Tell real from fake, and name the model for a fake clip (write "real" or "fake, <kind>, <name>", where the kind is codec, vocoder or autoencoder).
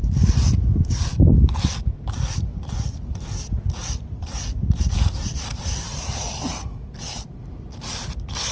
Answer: fake, vocoder, BigVGAN v2